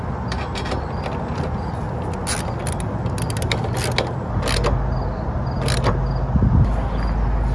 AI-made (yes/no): no